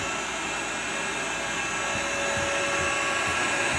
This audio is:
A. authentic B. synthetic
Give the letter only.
A